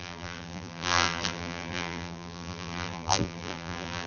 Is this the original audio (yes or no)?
no